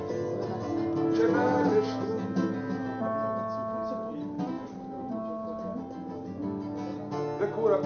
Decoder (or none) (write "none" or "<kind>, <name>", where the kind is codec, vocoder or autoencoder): none